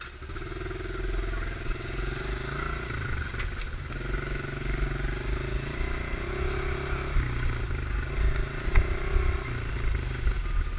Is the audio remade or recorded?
recorded